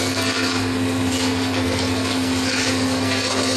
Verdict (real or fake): fake